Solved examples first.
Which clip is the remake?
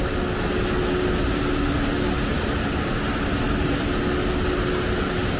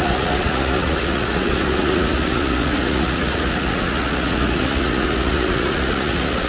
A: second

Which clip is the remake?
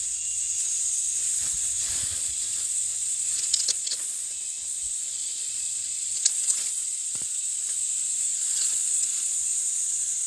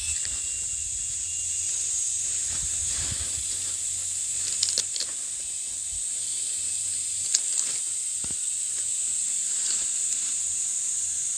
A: first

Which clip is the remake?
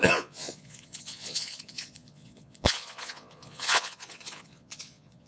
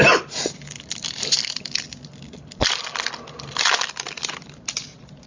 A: first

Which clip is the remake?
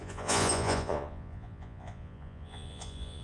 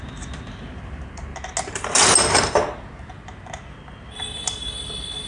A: first